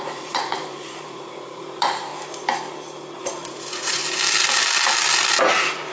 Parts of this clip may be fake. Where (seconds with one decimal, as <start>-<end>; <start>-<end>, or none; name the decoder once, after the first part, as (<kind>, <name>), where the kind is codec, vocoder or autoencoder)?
0.0-2.1 (vocoder, Vocos); 3.2-4.0